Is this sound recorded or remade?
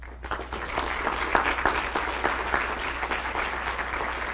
recorded